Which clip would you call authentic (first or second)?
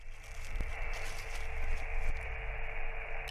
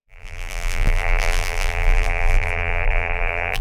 first